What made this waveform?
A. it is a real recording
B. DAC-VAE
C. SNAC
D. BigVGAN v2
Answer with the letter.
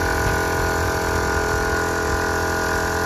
A